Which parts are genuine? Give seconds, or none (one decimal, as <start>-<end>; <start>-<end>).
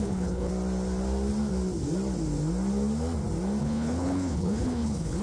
0.5-3.6